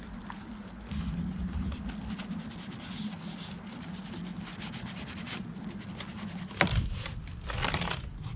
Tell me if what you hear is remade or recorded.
recorded